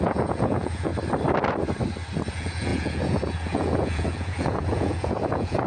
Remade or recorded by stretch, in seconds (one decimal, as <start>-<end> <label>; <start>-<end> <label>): 0.0-0.9 remade; 0.9-2.3 recorded; 2.3-5.7 remade